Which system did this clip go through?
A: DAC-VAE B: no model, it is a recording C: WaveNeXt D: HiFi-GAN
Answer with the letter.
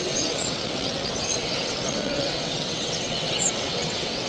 C